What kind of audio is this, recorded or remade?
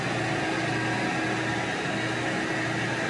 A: recorded